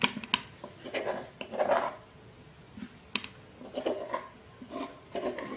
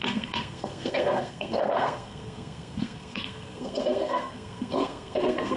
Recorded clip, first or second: first